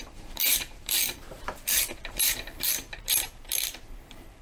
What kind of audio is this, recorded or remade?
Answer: remade